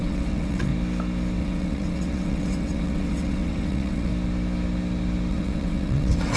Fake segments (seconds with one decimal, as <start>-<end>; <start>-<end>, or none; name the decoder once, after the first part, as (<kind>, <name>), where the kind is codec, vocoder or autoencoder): 0.0-0.7 (vocoder, WaveNeXt); 1.4-4.1; 5.3-6.4